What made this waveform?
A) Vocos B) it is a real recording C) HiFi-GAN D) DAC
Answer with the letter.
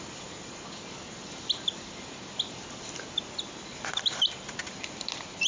B